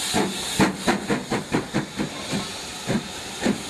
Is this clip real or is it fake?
real